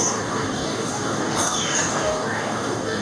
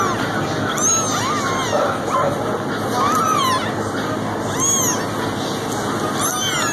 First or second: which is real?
second